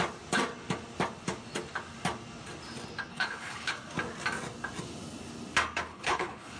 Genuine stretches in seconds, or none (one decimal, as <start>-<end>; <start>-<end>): 0.0-3.1; 3.7-5.9